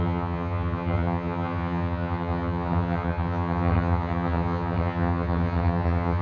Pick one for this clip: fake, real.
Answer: fake